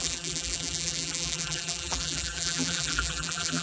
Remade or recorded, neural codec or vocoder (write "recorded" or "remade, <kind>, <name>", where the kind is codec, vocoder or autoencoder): remade, vocoder, BigVGAN v2